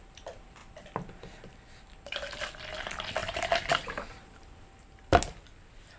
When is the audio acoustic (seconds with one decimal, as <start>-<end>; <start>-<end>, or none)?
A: 0.0-6.0